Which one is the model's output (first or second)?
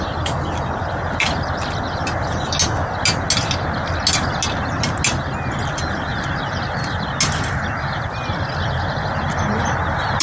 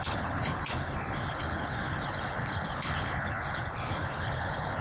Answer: second